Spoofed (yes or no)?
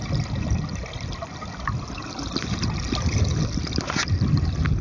no